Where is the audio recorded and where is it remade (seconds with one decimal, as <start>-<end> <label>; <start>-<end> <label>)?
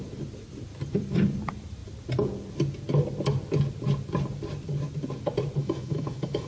0.0-5.6 recorded; 5.6-6.5 remade